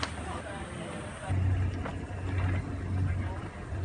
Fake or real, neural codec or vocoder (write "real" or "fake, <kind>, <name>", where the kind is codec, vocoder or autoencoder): real